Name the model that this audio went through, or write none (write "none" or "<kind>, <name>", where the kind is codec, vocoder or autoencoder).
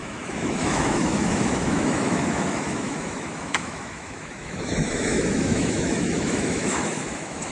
autoencoder, DAC-VAE